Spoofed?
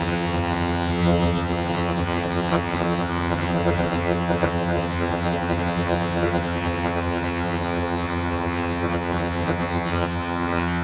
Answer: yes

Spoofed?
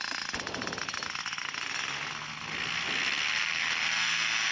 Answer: no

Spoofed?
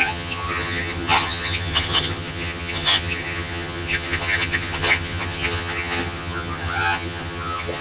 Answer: yes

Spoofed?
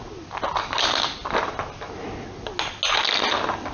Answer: no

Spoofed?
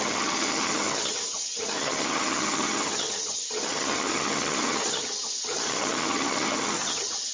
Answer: yes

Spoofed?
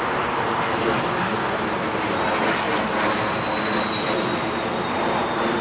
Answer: no